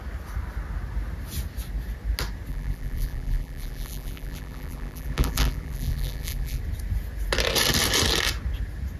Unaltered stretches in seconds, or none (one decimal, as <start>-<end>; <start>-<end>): 0.0-2.5; 6.6-9.0